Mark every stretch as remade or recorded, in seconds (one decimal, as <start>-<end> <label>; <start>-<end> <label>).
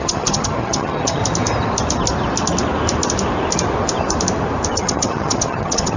0.0-1.2 remade; 1.2-4.8 recorded; 4.8-6.0 remade